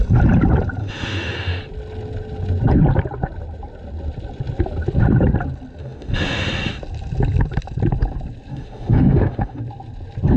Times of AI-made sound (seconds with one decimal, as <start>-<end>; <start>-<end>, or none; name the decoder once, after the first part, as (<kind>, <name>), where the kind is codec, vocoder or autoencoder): 0.8-1.6 (autoencoder, DAC-VAE); 5.8-6.5; 8.5-9.6